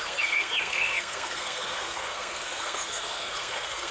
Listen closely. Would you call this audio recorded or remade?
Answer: remade